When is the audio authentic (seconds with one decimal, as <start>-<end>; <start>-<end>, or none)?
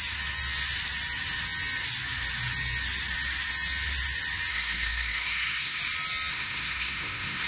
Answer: 0.0-4.5; 5.8-6.3